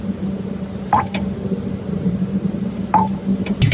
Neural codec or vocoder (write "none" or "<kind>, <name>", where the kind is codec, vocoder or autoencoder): none